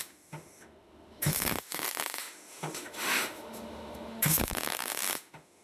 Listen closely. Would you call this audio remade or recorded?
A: remade